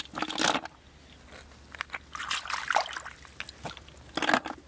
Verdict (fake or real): real